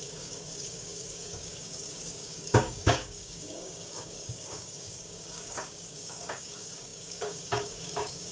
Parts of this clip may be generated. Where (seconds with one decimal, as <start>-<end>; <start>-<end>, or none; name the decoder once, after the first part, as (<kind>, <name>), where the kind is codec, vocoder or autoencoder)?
0.0-8.3 (codec, DAC)